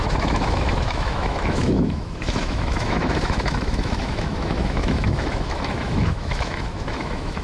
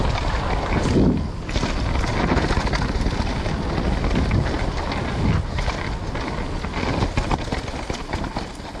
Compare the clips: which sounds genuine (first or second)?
second